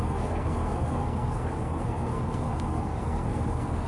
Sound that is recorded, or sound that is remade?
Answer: remade